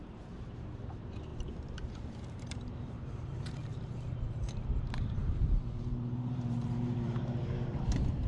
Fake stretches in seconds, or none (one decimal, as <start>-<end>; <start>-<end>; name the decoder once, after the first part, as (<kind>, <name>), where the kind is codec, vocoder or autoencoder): 0.0-8.3 (vocoder, BigVGAN v2)